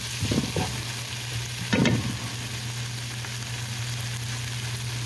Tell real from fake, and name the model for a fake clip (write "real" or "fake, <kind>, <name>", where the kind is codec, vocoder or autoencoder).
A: real